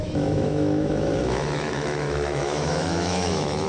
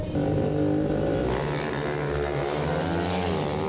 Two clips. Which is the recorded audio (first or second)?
second